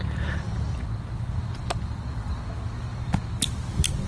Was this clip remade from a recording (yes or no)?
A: no